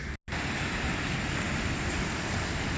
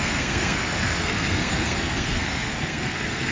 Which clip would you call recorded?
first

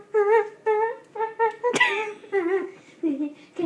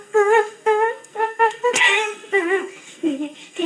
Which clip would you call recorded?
first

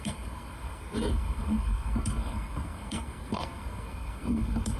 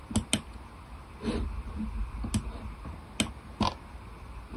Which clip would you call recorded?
second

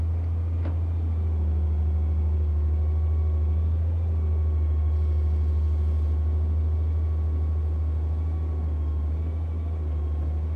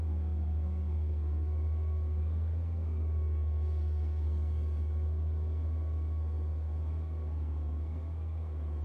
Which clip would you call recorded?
first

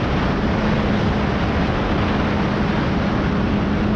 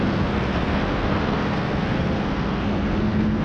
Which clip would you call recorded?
first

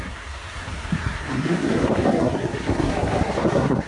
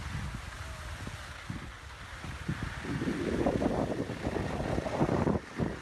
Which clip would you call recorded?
second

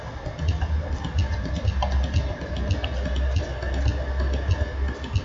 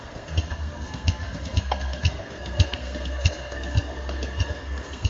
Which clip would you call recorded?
first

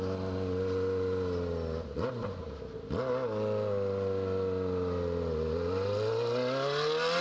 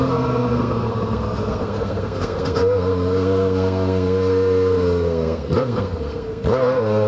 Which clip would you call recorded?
first